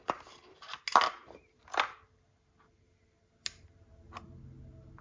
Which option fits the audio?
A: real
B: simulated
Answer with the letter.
A